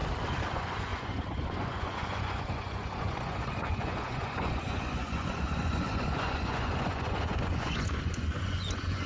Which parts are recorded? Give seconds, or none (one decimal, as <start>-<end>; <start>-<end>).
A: 0.0-0.5